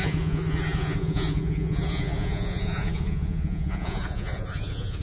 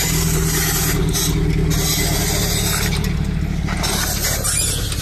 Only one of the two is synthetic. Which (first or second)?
first